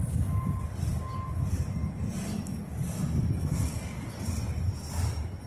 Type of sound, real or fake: real